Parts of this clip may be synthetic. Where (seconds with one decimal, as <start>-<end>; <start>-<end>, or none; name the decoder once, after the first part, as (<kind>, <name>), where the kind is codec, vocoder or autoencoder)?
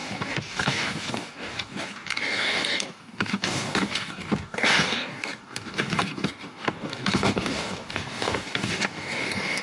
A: 0.0-9.6 (codec, DAC)